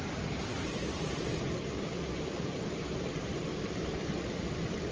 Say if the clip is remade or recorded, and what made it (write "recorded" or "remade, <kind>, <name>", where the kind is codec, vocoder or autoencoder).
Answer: recorded